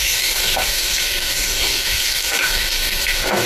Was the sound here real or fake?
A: fake